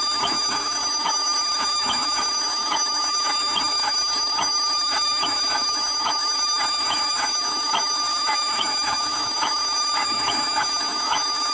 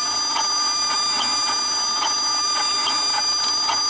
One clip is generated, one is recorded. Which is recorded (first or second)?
second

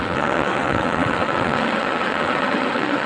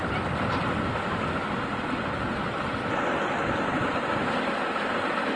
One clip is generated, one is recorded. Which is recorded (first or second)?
second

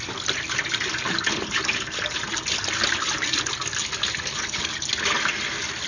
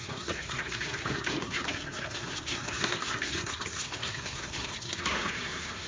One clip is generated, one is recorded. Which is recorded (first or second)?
first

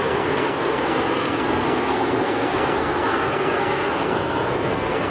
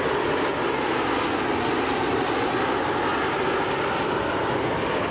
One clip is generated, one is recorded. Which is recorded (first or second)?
second